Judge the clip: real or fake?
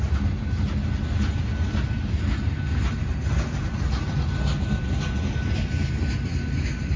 real